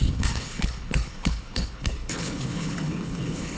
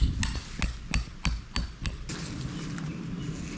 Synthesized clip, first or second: first